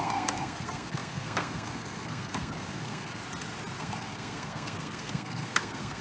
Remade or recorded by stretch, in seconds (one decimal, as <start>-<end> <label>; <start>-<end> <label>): 0.0-3.2 remade; 3.2-3.8 recorded; 3.8-6.0 remade